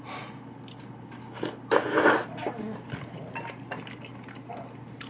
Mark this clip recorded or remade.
recorded